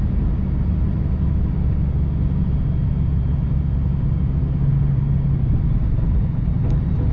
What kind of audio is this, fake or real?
real